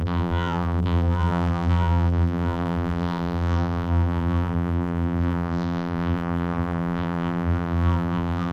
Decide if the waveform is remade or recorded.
remade